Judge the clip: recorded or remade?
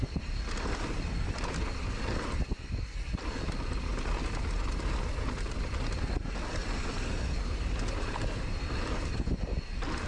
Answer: recorded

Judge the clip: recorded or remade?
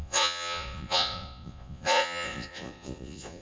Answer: remade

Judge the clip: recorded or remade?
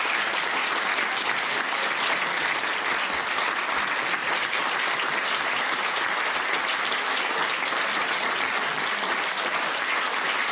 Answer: recorded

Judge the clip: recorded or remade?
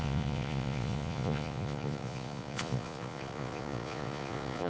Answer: remade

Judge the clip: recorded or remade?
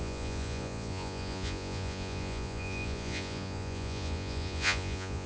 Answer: remade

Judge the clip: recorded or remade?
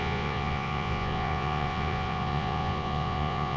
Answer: remade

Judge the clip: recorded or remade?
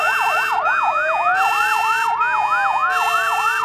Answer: recorded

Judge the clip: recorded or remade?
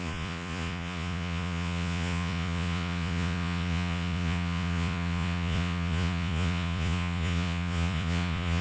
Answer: remade